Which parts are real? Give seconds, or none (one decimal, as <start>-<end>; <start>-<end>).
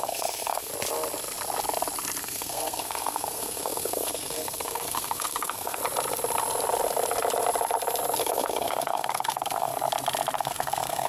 0.7-2.2; 5.8-8.2; 9.7-10.4